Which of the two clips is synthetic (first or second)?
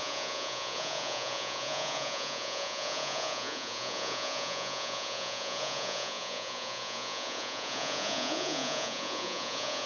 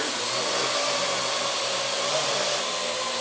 first